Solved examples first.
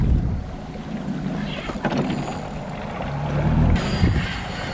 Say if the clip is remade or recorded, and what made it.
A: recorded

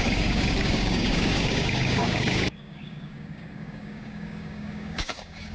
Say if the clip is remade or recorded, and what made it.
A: remade, codec, DAC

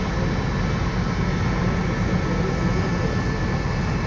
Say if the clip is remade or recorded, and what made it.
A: recorded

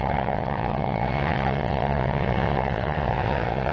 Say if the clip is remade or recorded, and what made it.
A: remade, vocoder, WaveNeXt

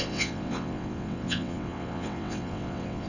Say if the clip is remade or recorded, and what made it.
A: remade, vocoder, WaveNeXt